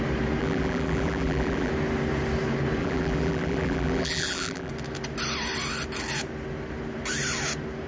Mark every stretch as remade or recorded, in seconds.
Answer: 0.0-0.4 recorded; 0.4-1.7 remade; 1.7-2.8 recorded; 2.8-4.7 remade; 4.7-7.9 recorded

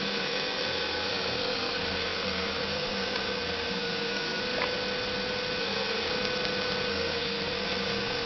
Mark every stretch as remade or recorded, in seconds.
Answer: 0.0-4.4 remade; 4.4-5.6 recorded; 5.6-6.1 remade; 6.1-6.9 recorded; 6.9-8.3 remade

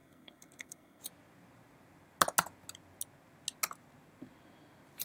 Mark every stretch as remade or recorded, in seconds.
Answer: 0.0-1.0 remade; 1.0-5.0 recorded

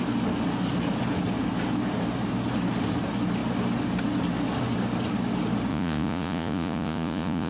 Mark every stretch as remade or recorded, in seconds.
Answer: 0.0-5.7 recorded; 5.7-7.5 remade

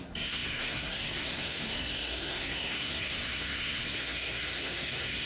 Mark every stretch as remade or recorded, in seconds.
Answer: 0.0-5.3 remade

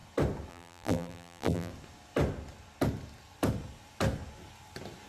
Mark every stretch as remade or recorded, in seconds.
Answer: 0.0-0.5 recorded; 0.5-1.7 remade; 1.7-5.1 recorded

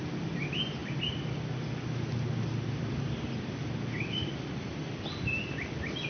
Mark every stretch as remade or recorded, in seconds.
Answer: 0.0-6.1 recorded